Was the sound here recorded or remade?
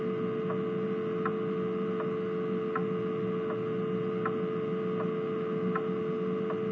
recorded